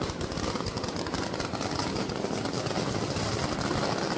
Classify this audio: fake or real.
real